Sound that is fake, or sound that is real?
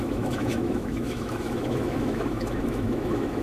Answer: fake